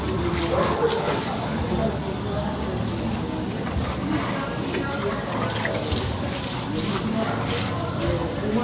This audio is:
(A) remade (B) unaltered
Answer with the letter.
B